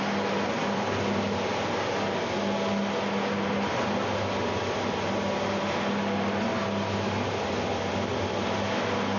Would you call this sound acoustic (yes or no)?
yes